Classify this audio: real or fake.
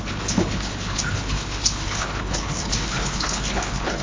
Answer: fake